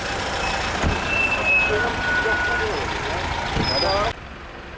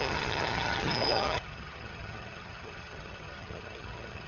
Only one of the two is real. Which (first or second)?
first